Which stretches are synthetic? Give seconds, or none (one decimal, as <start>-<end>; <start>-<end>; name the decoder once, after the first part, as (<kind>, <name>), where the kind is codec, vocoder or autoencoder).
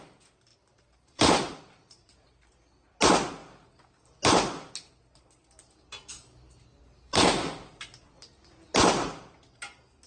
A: 0.5-2.5 (vocoder, BigVGAN v2); 6.0-7.4